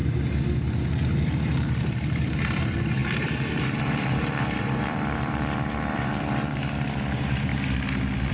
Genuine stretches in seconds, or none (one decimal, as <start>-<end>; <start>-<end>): 0.0-0.9; 7.5-8.3